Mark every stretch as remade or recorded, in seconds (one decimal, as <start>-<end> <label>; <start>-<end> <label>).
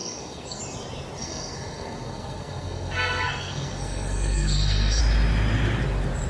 0.0-0.6 remade; 0.6-1.2 recorded; 1.2-5.0 remade; 5.0-6.3 recorded